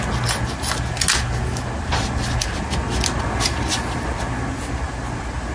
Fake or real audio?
real